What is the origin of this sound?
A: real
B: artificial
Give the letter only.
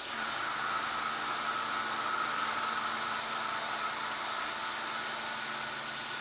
A